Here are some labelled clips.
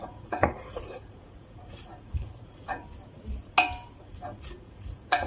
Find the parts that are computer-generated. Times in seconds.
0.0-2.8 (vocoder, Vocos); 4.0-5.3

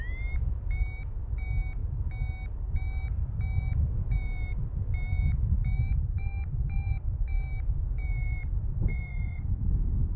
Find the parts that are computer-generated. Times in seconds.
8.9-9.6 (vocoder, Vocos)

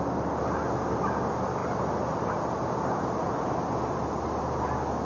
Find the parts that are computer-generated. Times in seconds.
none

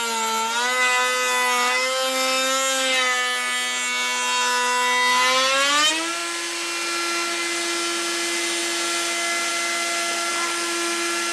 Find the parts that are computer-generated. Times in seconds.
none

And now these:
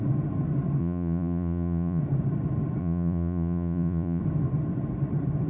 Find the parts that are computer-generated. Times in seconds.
0.8-2.0 (vocoder, Vocos); 2.8-4.2

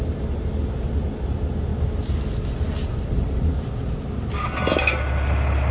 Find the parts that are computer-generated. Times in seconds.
none

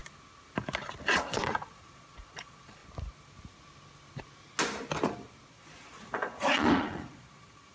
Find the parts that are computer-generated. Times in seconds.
1.1-2.8 (vocoder, Vocos); 5.5-7.7

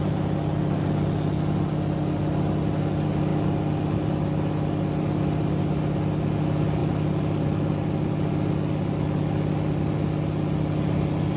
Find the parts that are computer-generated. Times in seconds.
none